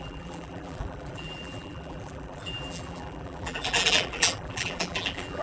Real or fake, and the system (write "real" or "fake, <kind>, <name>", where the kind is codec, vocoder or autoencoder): fake, vocoder, BigVGAN v2